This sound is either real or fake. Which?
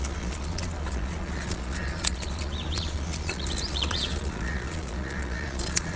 fake